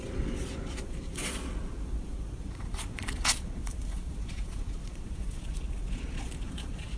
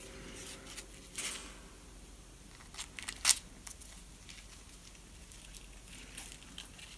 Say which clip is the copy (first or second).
first